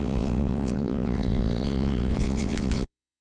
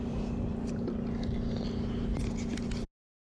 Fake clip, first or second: first